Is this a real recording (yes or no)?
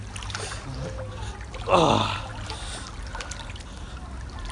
yes